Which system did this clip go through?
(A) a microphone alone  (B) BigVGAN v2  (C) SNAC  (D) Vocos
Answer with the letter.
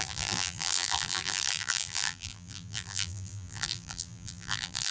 B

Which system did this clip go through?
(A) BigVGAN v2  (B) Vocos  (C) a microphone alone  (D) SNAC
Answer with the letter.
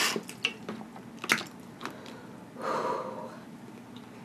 C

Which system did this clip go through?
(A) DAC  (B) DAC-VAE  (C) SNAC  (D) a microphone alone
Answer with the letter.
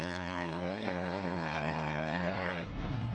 C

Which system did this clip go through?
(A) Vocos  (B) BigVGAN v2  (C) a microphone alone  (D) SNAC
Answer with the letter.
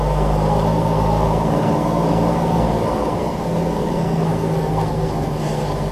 D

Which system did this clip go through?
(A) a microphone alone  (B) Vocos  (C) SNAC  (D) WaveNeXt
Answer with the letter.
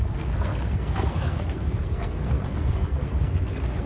C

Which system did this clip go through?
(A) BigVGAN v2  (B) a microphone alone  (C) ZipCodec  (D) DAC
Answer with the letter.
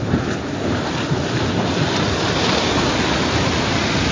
B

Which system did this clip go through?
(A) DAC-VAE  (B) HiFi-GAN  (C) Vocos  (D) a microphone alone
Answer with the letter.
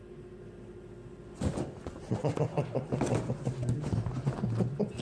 D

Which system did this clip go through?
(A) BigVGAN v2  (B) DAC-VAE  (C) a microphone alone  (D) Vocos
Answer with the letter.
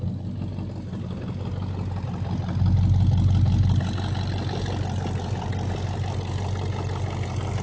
C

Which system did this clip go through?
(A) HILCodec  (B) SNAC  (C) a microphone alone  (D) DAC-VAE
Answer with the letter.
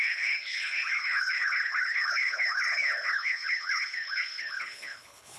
A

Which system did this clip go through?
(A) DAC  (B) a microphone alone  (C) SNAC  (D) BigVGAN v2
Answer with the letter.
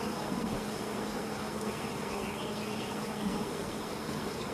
C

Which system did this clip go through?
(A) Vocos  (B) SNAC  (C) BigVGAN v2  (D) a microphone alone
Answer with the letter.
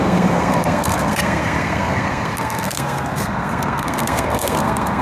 B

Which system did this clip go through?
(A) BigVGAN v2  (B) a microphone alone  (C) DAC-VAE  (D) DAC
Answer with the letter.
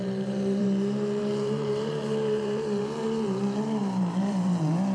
A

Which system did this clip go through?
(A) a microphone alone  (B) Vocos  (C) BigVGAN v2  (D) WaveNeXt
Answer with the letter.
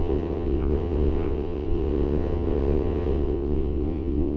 D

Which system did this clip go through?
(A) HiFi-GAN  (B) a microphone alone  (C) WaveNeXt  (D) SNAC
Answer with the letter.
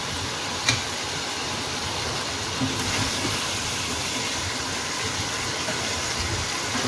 B